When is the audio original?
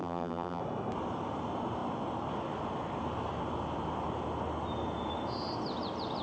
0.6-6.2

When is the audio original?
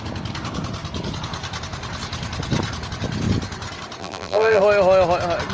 0.0-4.0; 4.6-5.5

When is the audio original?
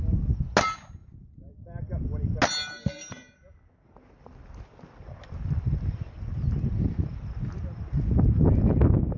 0.0-9.2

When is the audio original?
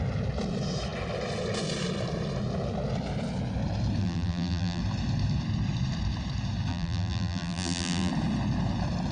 0.0-4.0; 4.8-6.7; 8.1-9.1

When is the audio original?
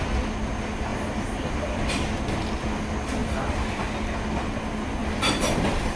0.0-0.9; 1.8-3.2; 3.8-5.0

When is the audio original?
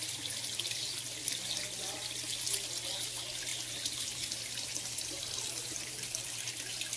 0.0-3.5; 6.3-7.0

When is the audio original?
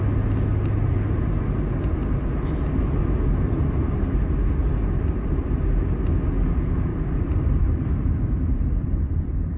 0.0-4.6; 6.0-6.9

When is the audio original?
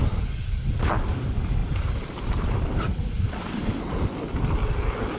0.0-1.6; 2.9-5.2